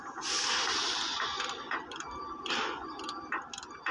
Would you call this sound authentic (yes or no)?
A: yes